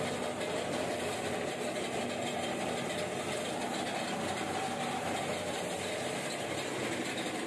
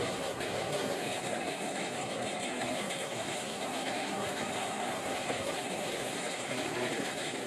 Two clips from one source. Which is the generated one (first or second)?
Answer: second